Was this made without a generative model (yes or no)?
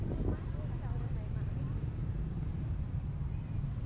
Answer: yes